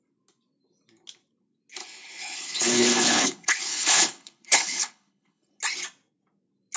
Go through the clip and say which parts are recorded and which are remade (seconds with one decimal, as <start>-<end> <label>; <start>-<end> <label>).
0.0-1.8 recorded; 1.8-5.6 remade; 5.6-6.8 recorded